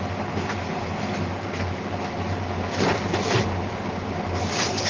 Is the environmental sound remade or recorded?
recorded